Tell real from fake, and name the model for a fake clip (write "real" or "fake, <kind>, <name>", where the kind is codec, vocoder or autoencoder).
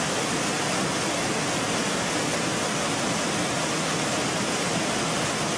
real